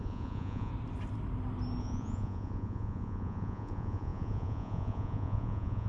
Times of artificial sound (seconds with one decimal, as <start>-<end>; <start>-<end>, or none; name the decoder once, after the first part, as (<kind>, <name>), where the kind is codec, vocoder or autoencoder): 0.0-0.7 (vocoder, Vocos); 1.8-5.9